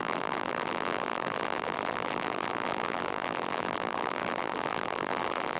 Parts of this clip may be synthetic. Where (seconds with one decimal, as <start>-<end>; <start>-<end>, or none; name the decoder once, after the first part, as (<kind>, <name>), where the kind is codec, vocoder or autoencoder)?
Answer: 0.0-5.6 (vocoder, BigVGAN v2)